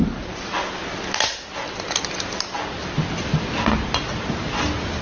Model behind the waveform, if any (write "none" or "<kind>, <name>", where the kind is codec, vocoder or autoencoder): none